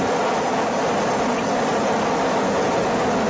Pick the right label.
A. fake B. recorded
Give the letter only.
B